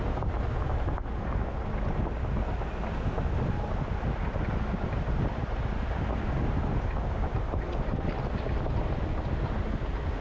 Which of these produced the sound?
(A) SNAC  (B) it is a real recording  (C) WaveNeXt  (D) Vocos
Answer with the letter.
B